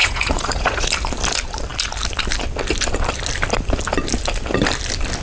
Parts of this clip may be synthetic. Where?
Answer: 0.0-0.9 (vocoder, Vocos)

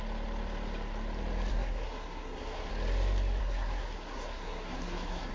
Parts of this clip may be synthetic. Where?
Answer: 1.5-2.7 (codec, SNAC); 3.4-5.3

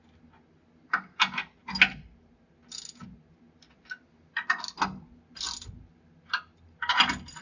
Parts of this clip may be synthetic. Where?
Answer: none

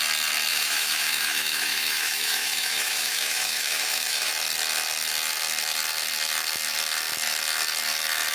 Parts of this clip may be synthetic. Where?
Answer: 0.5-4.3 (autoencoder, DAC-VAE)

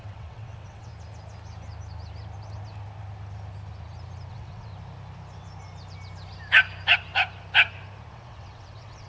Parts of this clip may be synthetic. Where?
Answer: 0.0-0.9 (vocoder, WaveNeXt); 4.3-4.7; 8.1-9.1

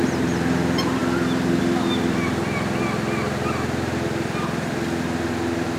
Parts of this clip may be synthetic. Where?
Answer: none

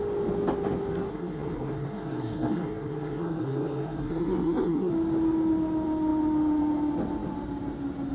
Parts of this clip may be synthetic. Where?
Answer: 1.1-4.9 (codec, SNAC)

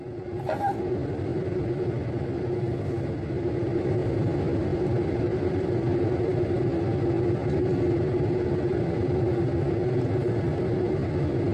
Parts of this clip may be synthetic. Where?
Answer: 1.3-2.4 (vocoder, BigVGAN v2); 4.0-6.4